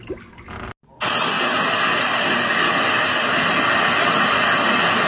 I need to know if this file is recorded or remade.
recorded